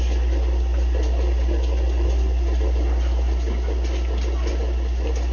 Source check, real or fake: real